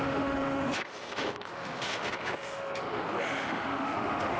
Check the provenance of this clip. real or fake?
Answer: fake